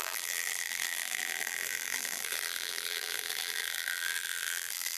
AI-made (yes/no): yes